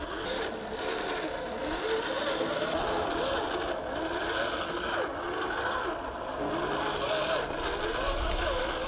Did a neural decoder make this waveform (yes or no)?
no